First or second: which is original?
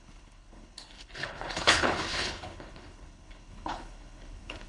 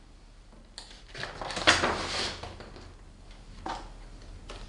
second